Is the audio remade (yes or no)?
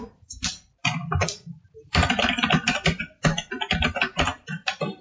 yes